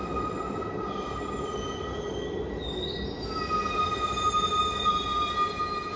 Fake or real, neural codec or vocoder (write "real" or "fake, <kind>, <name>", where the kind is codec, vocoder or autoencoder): real